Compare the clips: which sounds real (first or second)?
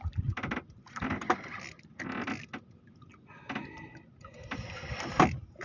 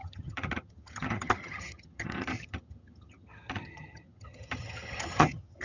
first